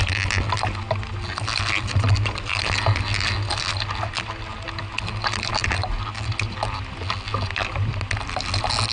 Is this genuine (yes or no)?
yes